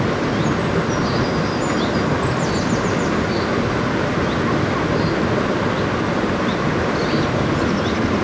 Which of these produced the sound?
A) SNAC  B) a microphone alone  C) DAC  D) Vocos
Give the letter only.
B